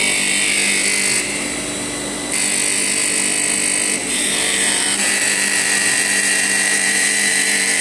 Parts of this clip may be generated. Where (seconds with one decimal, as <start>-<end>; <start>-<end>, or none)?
4.0-7.8